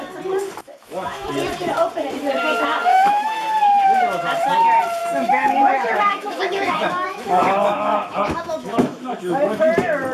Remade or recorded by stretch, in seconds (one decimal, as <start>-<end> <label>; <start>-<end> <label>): 0.0-0.6 recorded; 0.6-1.3 remade; 1.3-2.9 recorded; 2.9-3.5 remade; 3.5-5.0 recorded; 5.0-9.7 remade; 9.7-10.1 recorded